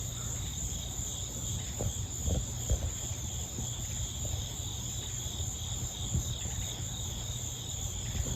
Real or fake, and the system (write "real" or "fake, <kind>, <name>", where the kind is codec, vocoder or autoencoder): real